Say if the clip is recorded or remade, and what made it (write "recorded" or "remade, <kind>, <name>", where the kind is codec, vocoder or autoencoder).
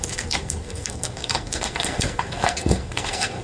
remade, codec, SNAC